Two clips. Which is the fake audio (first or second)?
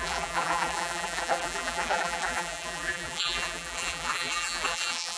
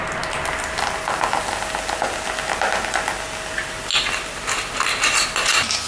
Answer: first